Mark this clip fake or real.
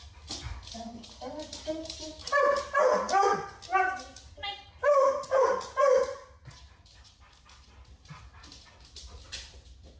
real